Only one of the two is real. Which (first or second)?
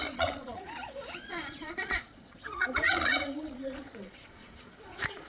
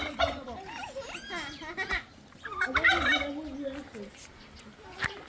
second